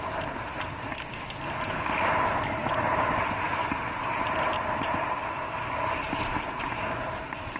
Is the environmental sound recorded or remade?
recorded